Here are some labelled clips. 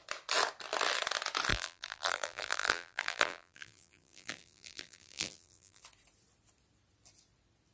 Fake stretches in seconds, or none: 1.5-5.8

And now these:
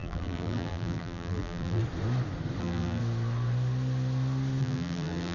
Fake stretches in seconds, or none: 0.0-1.8; 2.6-3.0; 4.6-5.3

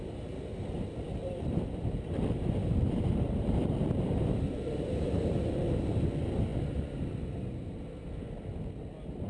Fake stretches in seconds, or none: 1.2-5.7

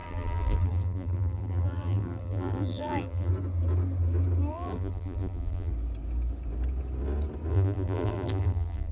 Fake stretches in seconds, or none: 0.0-3.3; 4.5-5.7; 7.5-8.9

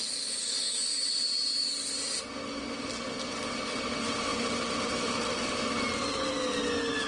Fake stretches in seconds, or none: none

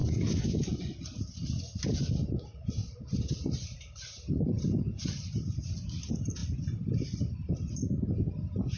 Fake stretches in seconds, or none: 2.5-6.0

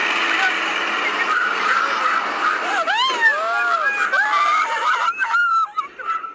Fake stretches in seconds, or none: 0.0-2.0; 4.8-6.3

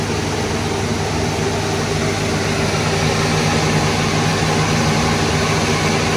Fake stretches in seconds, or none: none